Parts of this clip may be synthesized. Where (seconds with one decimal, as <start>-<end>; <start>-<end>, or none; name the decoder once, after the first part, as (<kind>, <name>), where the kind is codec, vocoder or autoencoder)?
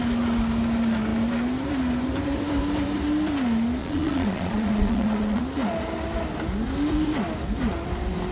3.8-5.4 (vocoder, Vocos)